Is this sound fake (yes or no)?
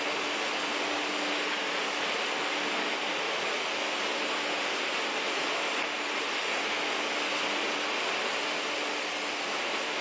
no